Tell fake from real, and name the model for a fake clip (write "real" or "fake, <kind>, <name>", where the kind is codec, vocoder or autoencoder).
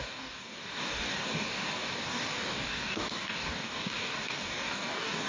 fake, codec, DAC